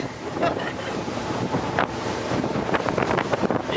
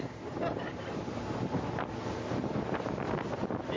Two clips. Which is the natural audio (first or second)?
second